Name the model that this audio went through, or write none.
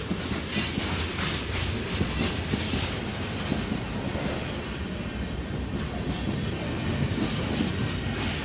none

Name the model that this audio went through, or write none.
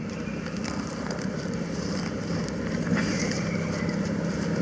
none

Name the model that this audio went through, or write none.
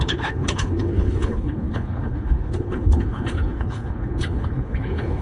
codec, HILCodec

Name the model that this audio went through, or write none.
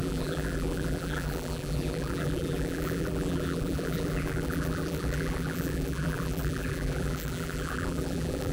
vocoder, BigVGAN v2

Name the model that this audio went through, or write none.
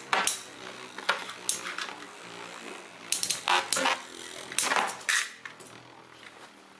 none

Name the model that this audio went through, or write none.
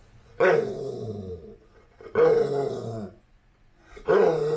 vocoder, Vocos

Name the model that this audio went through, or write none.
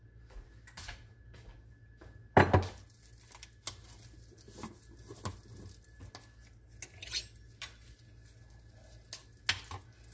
none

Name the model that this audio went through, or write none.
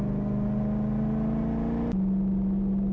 none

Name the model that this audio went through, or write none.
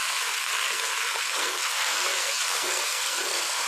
codec, SNAC